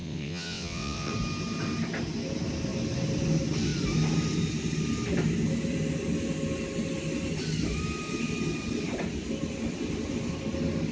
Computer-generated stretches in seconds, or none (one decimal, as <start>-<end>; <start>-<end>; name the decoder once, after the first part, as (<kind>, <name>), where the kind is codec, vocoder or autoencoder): 0.0-1.1 (vocoder, WaveNeXt)